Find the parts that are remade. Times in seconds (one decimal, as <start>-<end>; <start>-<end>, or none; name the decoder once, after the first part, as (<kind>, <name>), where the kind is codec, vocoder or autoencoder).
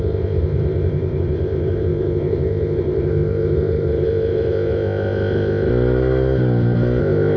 0.0-5.7 (codec, ZipCodec); 7.0-7.4